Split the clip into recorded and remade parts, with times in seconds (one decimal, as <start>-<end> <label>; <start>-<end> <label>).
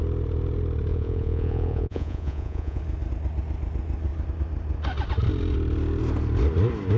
0.0-0.9 recorded; 0.9-2.8 remade; 2.8-7.0 recorded